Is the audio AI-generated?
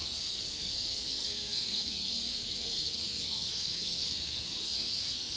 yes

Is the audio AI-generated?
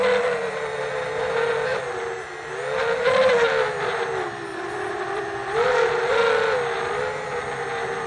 no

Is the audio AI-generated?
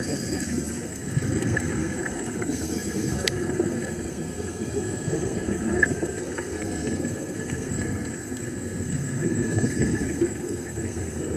yes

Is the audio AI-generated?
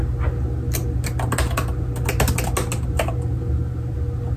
no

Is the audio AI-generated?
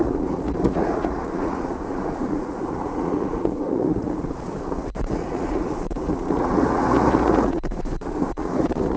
yes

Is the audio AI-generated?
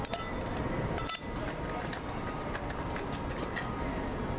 no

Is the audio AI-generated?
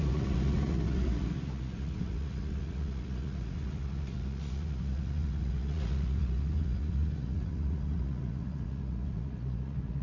yes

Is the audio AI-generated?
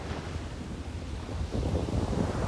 no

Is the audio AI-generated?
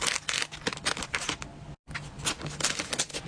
no